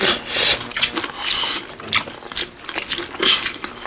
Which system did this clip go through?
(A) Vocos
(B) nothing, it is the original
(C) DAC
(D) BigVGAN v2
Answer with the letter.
B